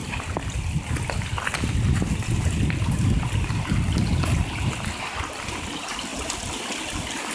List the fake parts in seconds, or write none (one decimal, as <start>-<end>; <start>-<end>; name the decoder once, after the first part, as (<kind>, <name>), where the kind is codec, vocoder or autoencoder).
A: none